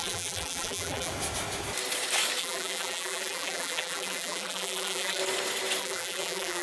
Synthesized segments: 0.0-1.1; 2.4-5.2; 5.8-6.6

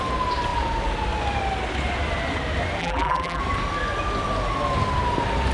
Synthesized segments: 2.8-3.4

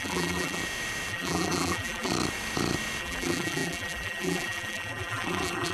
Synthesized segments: 0.0-0.6; 1.1-2.1; 3.0-5.7

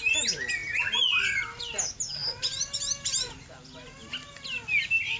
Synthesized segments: none

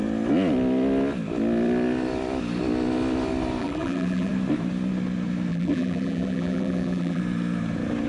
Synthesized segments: 3.6-4.3; 5.5-7.2

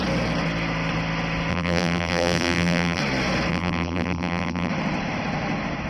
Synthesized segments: 1.5-3.0; 3.5-4.7